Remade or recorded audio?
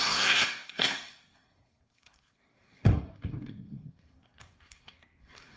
remade